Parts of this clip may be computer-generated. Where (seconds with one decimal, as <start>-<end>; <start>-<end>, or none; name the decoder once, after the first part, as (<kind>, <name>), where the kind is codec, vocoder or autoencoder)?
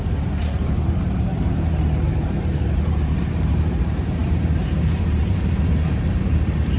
0.0-6.8 (vocoder, BigVGAN v2)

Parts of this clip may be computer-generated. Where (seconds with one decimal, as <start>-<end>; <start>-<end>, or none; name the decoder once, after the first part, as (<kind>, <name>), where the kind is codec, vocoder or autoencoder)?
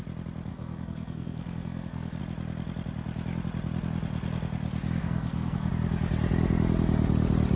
0.5-2.2 (codec, SNAC); 5.0-5.7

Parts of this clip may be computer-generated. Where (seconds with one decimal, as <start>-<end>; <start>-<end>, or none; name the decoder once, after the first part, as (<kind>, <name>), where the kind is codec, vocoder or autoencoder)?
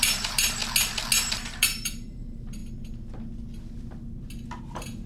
0.0-0.6 (vocoder, BigVGAN v2); 1.2-2.6; 4.6-5.1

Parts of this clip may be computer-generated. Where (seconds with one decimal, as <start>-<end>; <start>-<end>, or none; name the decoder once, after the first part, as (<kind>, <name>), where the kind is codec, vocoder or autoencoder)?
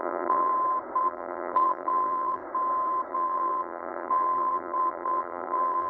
0.0-0.5 (vocoder, BigVGAN v2); 1.0-2.4; 3.1-5.9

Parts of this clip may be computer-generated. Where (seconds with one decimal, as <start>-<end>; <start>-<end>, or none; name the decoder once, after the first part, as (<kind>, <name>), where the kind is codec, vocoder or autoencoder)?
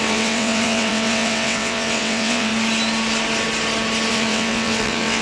0.0-2.5 (vocoder, WaveNeXt); 4.1-5.2